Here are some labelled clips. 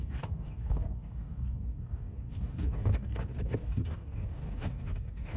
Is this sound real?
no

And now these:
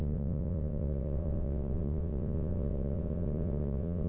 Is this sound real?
no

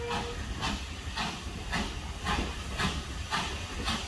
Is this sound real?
yes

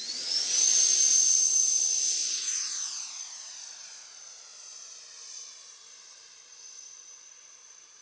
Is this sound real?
no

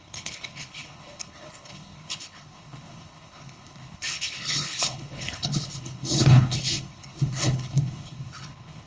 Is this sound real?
no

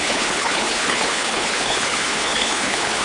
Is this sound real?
no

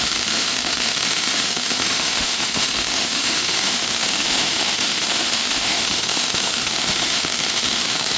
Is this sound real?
no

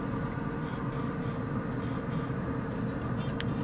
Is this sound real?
yes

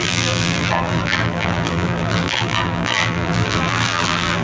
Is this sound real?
no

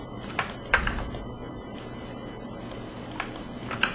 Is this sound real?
yes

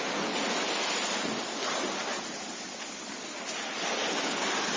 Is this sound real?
yes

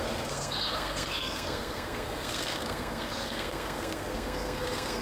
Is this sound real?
no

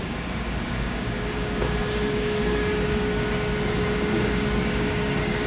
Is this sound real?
no